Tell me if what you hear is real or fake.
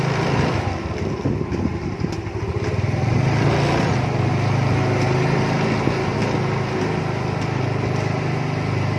real